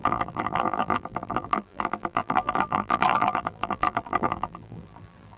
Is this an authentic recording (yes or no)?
no